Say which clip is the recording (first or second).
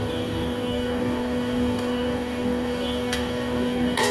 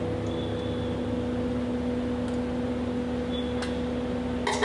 second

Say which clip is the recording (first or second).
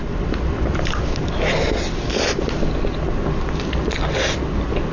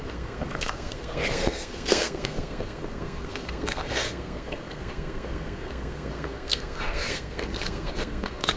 first